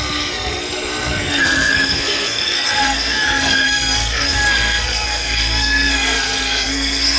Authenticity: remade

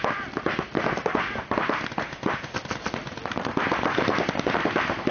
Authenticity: recorded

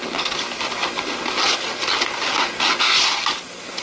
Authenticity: recorded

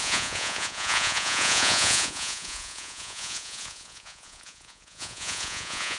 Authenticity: remade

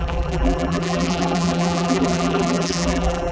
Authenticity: remade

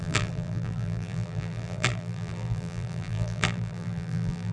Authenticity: remade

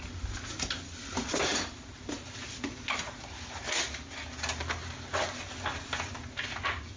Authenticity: recorded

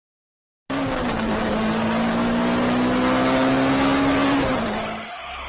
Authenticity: recorded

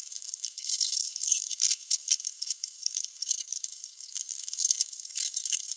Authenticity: remade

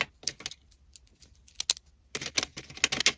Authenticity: recorded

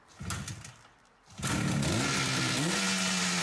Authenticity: recorded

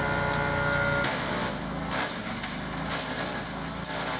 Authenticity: recorded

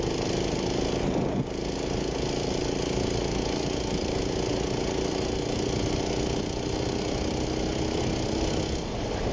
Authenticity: recorded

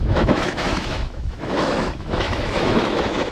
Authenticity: remade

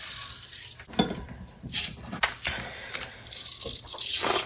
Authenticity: recorded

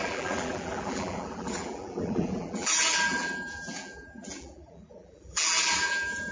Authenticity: remade